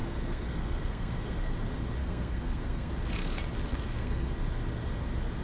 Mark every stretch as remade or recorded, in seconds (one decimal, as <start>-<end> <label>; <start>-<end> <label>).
0.0-1.5 remade; 1.5-2.0 recorded; 2.0-2.9 remade; 2.9-3.7 recorded; 3.7-4.3 remade; 4.3-5.4 recorded